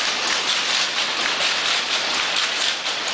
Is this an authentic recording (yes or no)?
yes